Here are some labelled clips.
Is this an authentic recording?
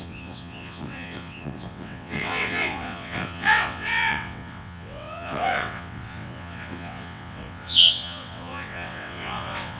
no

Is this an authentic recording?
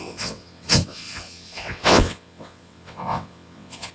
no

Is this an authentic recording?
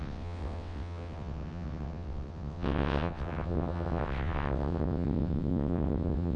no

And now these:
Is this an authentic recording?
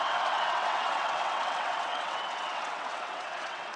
no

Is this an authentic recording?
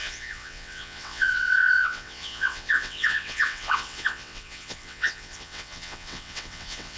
no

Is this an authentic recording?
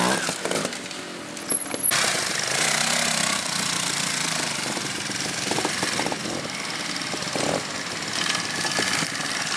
yes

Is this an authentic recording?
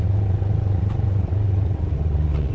no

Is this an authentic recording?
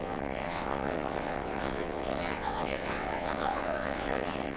no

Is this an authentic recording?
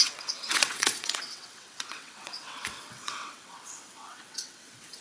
no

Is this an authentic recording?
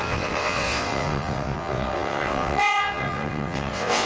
no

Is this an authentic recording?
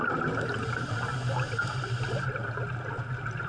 yes